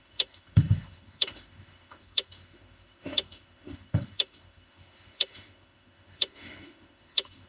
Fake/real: fake